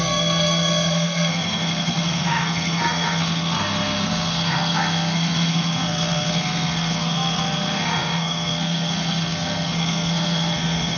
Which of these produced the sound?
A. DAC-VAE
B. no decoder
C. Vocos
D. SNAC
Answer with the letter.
D